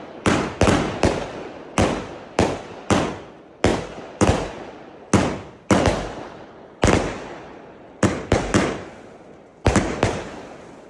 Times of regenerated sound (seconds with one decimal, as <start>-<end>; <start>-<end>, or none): 3.7-4.5; 9.5-10.2